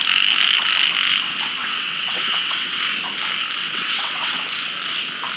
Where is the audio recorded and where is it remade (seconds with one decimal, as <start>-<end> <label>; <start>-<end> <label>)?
0.0-1.6 recorded; 1.6-2.8 remade; 2.8-3.6 recorded; 3.6-4.4 remade; 4.4-5.4 recorded